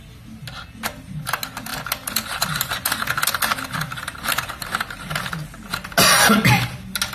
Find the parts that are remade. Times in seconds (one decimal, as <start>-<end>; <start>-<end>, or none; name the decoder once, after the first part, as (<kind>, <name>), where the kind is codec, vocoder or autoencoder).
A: none

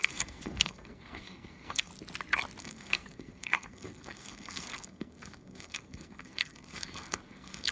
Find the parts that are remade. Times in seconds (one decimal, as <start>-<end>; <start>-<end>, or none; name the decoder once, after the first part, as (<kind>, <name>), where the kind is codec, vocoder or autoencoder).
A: 0.0-1.9 (codec, SNAC); 2.6-7.7